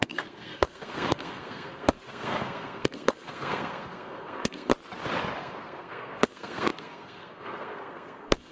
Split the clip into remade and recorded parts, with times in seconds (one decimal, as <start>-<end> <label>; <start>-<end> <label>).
0.0-4.7 remade; 4.7-5.4 recorded; 5.4-8.5 remade